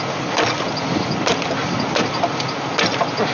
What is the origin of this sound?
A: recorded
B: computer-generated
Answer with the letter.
A